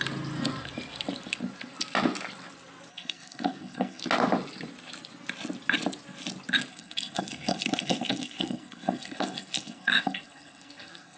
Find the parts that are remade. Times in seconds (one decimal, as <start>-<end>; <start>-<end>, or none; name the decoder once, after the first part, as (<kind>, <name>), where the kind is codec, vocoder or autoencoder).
2.9-4.0 (codec, SNAC); 6.7-11.2